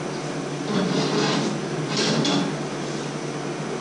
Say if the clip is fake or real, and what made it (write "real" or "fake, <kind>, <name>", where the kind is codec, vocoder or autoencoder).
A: real